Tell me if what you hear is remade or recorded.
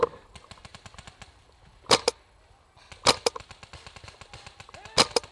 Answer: recorded